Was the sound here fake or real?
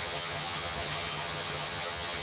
fake